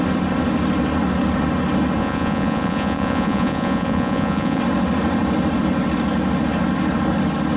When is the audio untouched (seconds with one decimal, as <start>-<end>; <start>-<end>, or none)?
0.0-2.0; 4.6-7.6

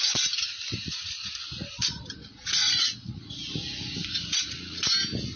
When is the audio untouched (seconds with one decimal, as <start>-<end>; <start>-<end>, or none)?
0.0-0.8; 1.3-2.3; 3.3-4.1; 4.8-5.4

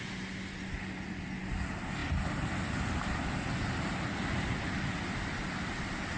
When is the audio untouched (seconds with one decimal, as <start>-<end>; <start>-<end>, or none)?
0.0-6.2

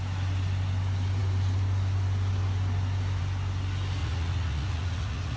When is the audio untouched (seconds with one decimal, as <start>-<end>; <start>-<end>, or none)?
0.0-4.0

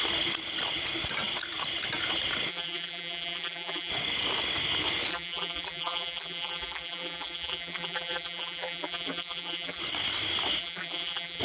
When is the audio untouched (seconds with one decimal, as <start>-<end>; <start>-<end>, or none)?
0.0-2.5; 3.9-5.1; 9.8-10.6